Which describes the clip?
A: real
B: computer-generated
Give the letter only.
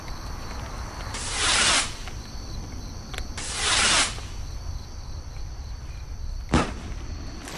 B